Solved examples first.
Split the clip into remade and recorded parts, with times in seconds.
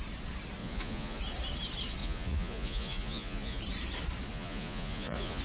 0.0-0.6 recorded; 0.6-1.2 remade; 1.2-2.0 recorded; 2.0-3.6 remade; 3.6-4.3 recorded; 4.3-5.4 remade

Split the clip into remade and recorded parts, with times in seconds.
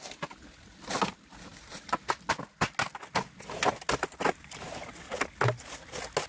0.0-6.3 recorded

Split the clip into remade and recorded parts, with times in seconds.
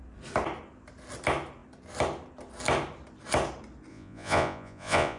0.0-3.9 recorded; 3.9-5.2 remade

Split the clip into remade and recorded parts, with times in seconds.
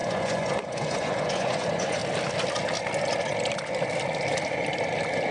0.0-2.0 remade; 2.0-5.3 recorded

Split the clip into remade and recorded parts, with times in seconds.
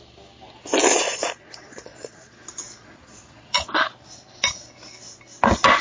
0.0-0.9 recorded; 0.9-2.4 remade; 2.4-2.8 recorded; 2.8-3.7 remade; 3.7-5.8 recorded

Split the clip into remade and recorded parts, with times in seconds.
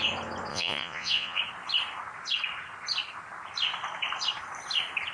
0.0-0.5 recorded; 0.5-1.4 remade; 1.4-5.1 recorded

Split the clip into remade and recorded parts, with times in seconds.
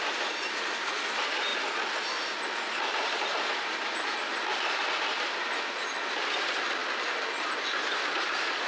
0.0-8.7 recorded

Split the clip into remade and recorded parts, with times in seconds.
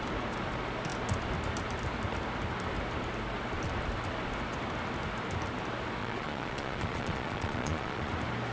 0.0-6.0 recorded; 6.0-8.1 remade; 8.1-8.5 recorded